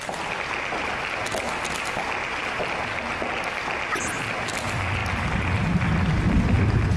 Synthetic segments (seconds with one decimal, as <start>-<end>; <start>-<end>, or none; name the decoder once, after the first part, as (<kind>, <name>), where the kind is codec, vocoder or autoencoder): none